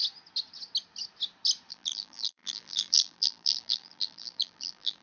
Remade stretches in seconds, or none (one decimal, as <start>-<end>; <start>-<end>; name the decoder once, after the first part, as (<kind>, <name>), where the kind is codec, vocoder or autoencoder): 1.7-5.0 (vocoder, BigVGAN v2)